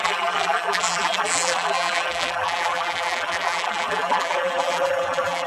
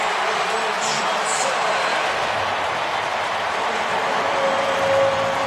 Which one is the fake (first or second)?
first